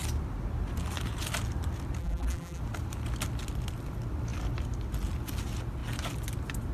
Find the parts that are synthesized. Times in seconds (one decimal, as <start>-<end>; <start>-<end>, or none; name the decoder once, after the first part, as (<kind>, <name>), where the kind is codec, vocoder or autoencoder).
2.0-2.6 (vocoder, BigVGAN v2)